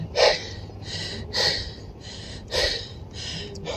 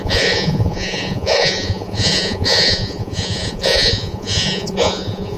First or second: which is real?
first